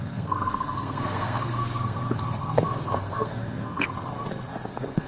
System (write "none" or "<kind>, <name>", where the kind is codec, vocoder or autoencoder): codec, SNAC